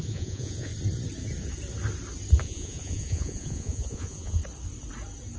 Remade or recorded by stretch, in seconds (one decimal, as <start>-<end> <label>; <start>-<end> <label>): 0.0-0.7 remade; 0.7-2.4 recorded; 2.4-4.4 remade; 4.4-5.4 recorded